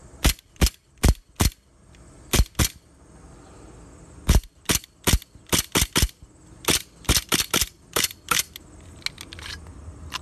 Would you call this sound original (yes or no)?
yes